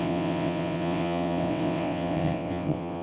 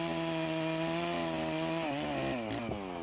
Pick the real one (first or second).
second